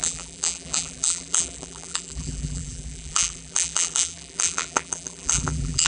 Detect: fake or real fake